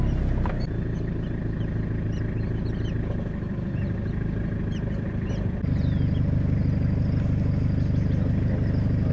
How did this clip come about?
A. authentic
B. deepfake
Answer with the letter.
A